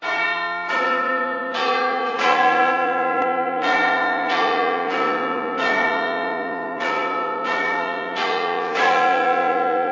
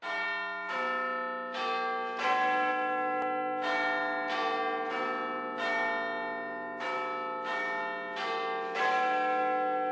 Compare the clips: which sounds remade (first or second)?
first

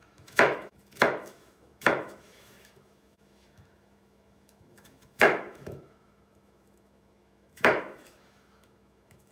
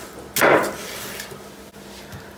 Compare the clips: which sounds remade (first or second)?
first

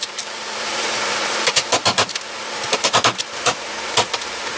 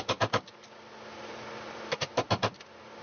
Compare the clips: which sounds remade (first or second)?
first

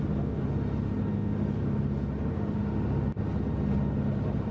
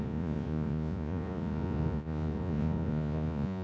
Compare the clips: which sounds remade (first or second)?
second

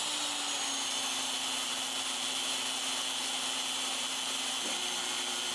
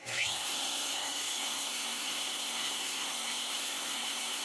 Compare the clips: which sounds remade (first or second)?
second